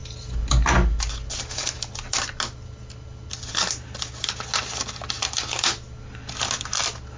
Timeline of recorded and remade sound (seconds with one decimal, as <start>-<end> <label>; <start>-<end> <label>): 0.0-7.2 recorded